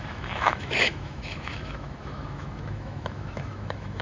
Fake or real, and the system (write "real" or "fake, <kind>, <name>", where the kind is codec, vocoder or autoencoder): fake, autoencoder, DAC-VAE